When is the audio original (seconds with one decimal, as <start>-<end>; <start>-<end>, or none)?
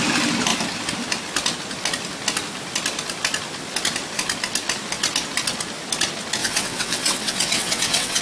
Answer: 0.0-6.4